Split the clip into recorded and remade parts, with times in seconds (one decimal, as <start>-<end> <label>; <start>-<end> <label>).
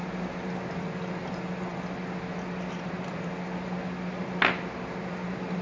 0.0-5.6 recorded